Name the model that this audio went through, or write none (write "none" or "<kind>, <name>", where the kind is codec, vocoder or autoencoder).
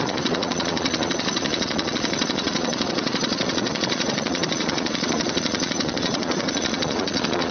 vocoder, Vocos